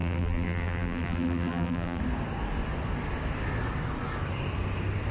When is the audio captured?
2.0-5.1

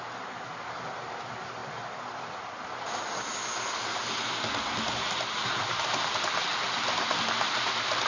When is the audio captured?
0.0-8.1

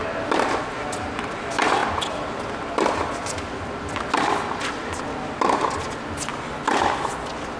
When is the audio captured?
0.0-7.6

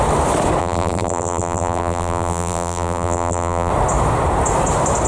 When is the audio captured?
0.0-0.6; 3.7-5.1

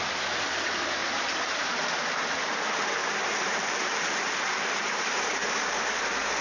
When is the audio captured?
0.0-1.0; 1.6-3.0; 5.7-6.4

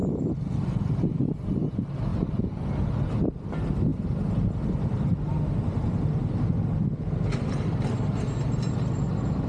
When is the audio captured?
0.0-9.5

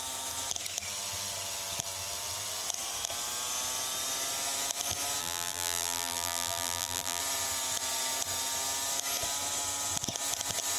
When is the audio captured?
0.0-5.2; 7.2-10.8

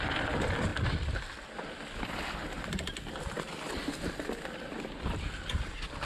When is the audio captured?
0.0-6.1